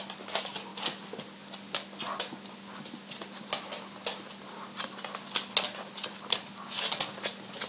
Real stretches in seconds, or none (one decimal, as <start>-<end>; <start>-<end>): 0.0-7.7